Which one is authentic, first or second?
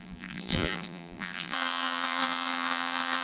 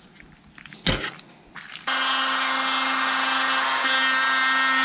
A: second